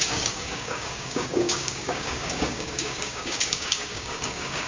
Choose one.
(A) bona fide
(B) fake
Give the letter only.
B